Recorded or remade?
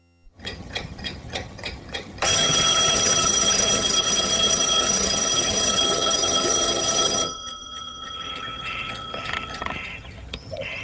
remade